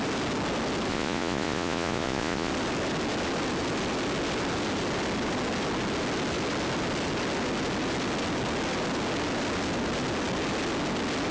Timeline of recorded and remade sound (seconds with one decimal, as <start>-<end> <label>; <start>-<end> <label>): 0.0-0.9 recorded; 0.9-2.5 remade; 2.5-11.3 recorded